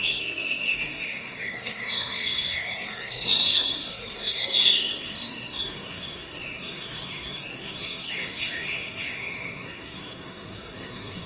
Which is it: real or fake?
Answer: fake